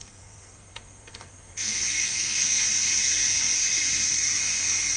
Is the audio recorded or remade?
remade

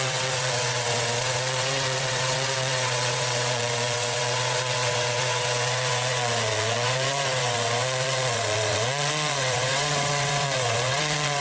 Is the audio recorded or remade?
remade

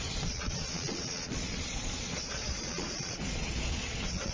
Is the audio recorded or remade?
remade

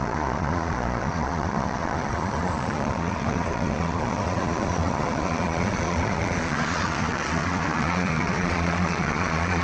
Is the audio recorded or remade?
remade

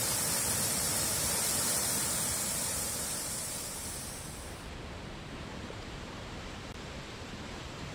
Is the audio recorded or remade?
remade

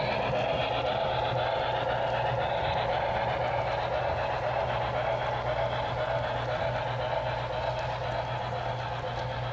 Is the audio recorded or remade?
recorded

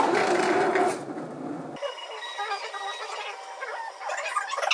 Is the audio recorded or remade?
recorded